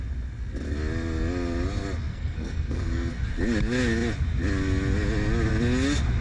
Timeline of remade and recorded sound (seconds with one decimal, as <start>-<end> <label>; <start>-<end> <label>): 0.0-2.1 recorded; 2.1-3.1 remade; 3.1-6.2 recorded